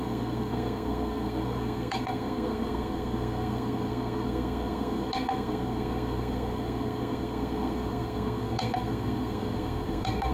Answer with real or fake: fake